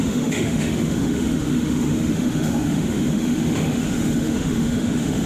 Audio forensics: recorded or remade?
remade